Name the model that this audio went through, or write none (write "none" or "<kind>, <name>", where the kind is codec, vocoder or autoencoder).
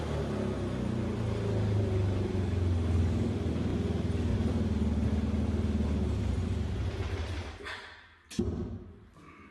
none